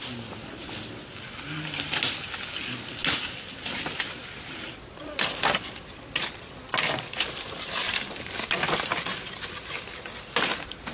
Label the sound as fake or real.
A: real